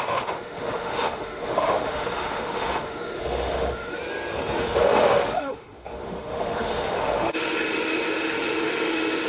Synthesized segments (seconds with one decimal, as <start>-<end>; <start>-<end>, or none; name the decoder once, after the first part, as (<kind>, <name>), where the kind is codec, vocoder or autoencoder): 0.0-4.0 (autoencoder, DAC-VAE); 4.6-9.3